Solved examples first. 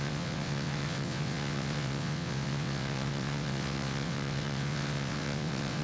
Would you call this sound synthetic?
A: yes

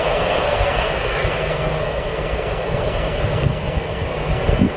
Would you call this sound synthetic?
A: yes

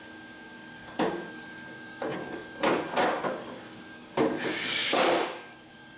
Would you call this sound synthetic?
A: yes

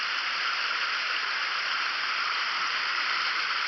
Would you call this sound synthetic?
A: yes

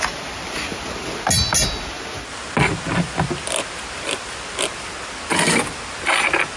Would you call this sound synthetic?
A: no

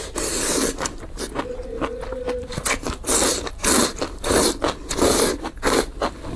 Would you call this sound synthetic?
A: no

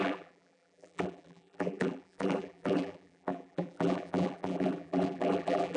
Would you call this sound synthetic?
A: yes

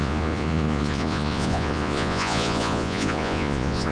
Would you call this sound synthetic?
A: yes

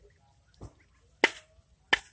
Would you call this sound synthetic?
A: no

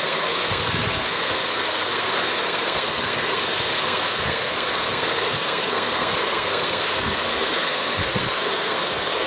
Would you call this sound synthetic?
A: yes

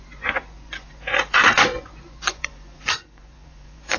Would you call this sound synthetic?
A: yes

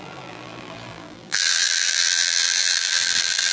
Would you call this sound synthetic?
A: yes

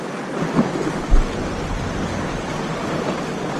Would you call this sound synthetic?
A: no